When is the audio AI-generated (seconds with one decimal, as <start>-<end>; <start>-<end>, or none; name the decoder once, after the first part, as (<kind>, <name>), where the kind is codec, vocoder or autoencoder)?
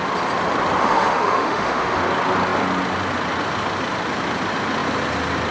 0.8-2.0 (autoencoder, DAC-VAE)